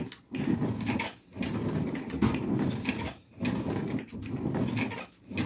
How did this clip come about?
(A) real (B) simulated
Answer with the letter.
A